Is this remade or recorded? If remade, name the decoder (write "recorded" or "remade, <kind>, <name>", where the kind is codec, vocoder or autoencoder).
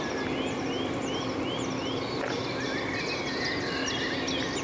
recorded